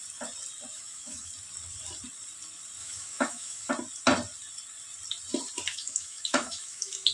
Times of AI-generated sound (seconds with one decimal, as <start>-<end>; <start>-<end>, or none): 0.7-1.3; 2.8-3.7; 5.7-7.1